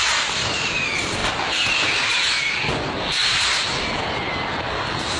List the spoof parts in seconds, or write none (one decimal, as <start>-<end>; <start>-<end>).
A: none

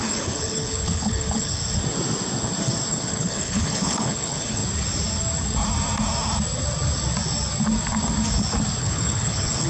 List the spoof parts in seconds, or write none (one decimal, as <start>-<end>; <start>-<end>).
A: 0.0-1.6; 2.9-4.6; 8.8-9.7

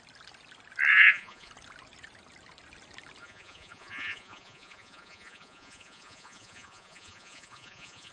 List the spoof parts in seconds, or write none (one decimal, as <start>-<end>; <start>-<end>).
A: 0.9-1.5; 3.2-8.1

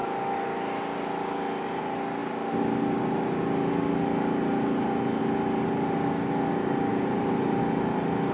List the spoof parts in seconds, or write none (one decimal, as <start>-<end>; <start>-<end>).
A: 6.9-7.6

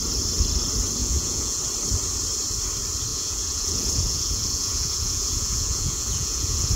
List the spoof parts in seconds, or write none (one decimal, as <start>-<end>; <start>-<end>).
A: 1.0-1.6; 3.1-6.8

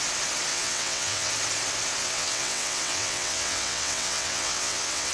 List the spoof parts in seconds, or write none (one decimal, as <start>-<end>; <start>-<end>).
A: 0.5-1.3; 2.0-5.1

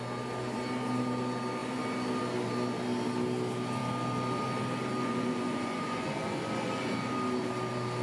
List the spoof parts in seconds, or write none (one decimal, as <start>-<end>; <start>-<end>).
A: 5.0-7.1